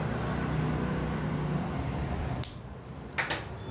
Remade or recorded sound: recorded